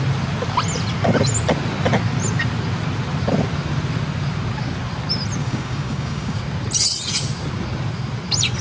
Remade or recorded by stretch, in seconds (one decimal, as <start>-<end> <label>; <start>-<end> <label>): 0.0-5.4 recorded; 5.4-6.4 remade; 6.4-8.6 recorded